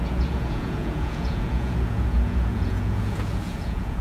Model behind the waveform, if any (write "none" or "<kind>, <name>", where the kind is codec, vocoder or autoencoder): vocoder, Vocos